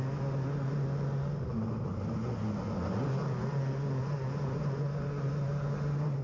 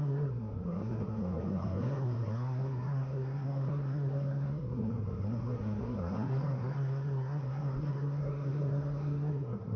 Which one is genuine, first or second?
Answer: first